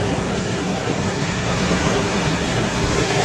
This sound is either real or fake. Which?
fake